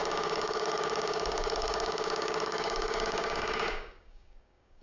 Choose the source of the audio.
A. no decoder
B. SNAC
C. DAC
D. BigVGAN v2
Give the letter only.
C